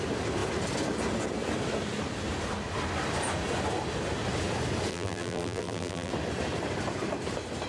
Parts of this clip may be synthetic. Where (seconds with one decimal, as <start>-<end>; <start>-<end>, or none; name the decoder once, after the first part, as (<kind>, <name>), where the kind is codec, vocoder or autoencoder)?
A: 4.9-6.1 (vocoder, BigVGAN v2)